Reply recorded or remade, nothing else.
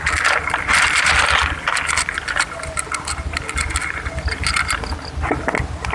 recorded